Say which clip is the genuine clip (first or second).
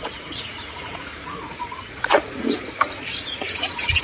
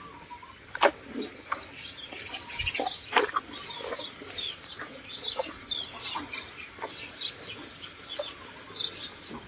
second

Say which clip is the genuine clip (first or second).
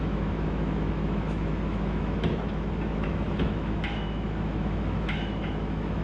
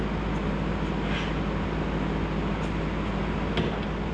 second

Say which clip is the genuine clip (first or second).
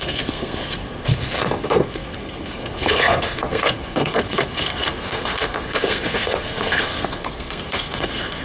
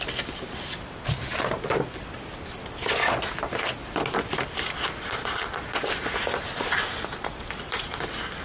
second